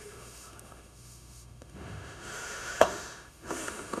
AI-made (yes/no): yes